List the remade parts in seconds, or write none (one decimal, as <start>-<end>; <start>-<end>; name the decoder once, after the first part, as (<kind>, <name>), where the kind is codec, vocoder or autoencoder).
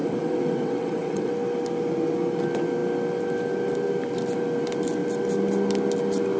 0.0-1.3 (vocoder, WaveNeXt)